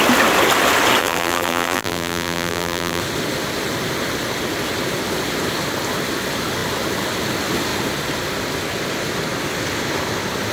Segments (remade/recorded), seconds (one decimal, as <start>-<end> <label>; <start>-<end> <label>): 0.0-1.0 recorded; 1.0-3.0 remade; 3.0-10.5 recorded